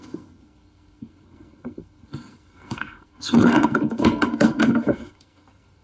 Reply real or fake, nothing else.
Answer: fake